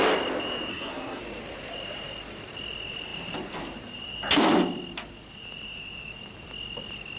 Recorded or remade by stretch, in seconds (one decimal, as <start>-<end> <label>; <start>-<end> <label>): 0.0-0.7 recorded; 0.7-1.2 remade; 1.2-7.2 recorded